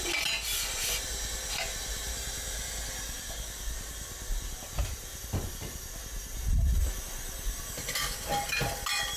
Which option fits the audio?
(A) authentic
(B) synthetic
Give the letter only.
A